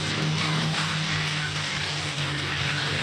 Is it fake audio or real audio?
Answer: fake